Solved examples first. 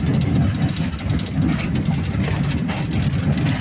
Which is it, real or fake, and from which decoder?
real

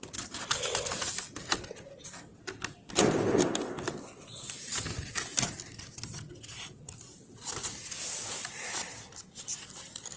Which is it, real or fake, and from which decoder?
real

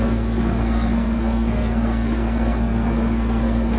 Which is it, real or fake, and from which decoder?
fake, codec, SNAC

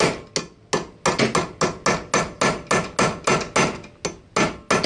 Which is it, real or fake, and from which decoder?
real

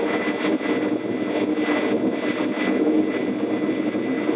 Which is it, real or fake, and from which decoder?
real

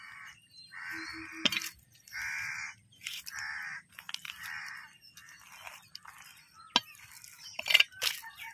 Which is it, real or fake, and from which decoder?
real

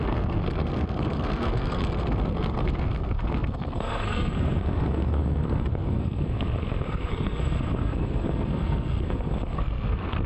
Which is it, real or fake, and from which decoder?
fake, codec, SNAC